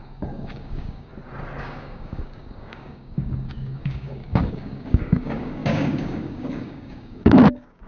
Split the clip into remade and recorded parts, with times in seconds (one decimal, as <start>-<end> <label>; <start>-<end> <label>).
0.0-1.1 remade; 1.1-1.6 recorded; 1.6-7.9 remade